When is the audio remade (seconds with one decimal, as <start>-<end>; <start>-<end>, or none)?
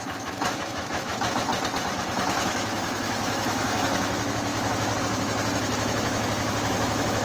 0.0-1.5; 2.4-7.2